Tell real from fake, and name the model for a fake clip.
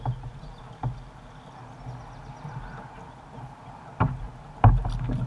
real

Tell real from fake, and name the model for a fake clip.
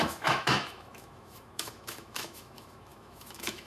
fake, autoencoder, DAC-VAE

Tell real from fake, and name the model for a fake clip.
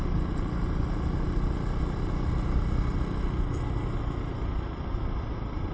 real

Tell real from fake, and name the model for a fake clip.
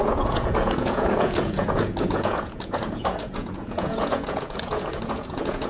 fake, vocoder, Vocos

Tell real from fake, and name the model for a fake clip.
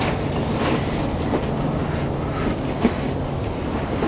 real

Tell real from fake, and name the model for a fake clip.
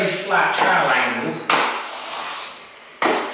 real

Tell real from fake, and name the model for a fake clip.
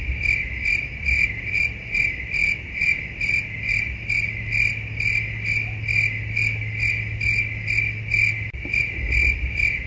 real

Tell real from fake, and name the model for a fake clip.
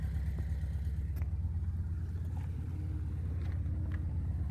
real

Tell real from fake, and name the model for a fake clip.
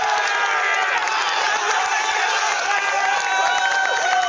real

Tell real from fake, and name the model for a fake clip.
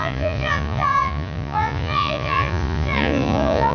fake, vocoder, Vocos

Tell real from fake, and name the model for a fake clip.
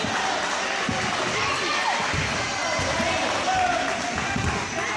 real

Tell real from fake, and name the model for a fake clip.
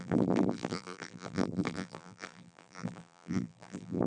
fake, vocoder, BigVGAN v2